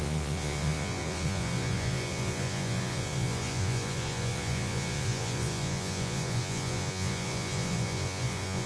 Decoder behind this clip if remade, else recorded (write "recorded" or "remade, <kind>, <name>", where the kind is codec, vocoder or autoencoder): remade, vocoder, Vocos